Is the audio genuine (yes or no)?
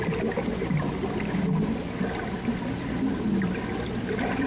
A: yes